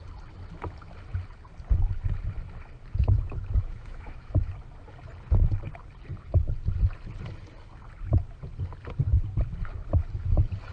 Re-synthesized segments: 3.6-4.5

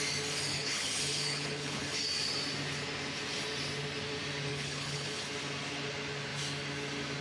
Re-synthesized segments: 0.5-2.0; 4.5-5.3

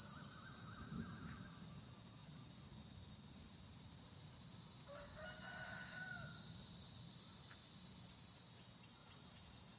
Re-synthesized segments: 9.0-9.8

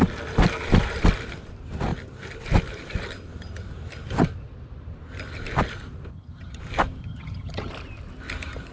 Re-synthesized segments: 6.1-6.6; 7.0-7.7

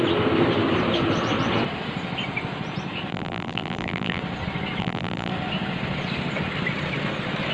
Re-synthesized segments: 3.1-4.2; 4.8-5.3

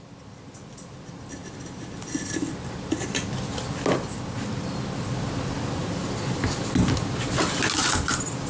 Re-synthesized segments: none

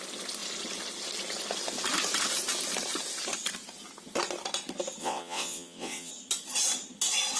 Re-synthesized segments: 5.0-6.1